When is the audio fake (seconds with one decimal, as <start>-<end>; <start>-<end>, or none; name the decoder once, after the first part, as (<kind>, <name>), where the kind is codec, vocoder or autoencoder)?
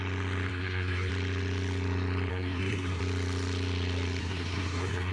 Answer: 0.5-1.1 (codec, SNAC); 2.3-3.0; 4.2-5.1